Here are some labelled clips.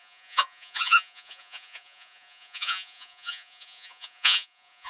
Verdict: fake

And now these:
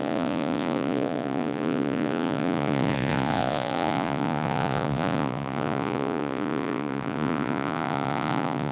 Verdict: fake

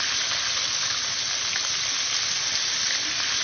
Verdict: real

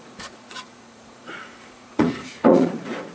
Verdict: fake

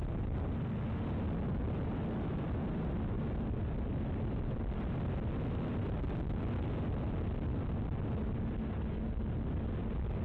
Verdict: real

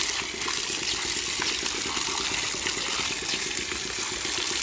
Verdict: real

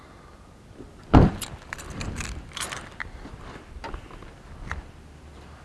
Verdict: real